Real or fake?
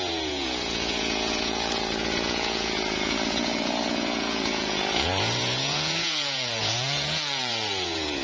fake